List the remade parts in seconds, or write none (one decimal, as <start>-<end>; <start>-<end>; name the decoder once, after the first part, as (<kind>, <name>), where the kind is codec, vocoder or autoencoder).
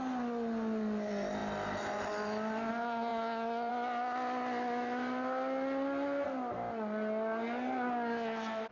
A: none